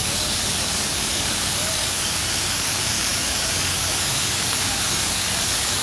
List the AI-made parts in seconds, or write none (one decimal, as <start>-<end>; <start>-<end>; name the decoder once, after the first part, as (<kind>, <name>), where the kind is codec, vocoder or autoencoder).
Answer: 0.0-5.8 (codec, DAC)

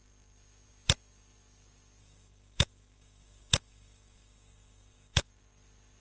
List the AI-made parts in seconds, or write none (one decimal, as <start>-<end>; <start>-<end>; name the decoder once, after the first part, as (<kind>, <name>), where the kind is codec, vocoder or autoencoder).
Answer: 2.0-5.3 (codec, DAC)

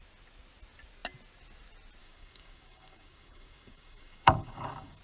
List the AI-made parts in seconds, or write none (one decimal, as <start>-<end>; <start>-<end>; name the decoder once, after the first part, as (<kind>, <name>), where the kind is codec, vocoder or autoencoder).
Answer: 2.0-5.0 (codec, DAC)

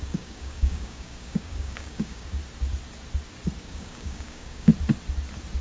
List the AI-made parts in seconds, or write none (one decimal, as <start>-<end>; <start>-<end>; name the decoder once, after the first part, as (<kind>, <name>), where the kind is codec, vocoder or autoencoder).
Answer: 0.0-2.4 (codec, DAC); 3.6-4.7